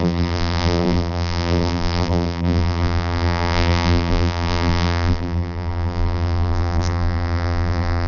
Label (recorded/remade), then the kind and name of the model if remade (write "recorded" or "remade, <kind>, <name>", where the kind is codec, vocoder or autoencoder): remade, vocoder, BigVGAN v2